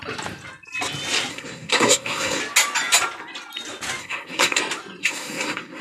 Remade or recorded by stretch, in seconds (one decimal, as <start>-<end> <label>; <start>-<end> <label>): 0.0-1.3 recorded; 1.3-2.4 remade; 2.4-4.0 recorded; 4.0-4.6 remade; 4.6-5.0 recorded; 5.0-5.8 remade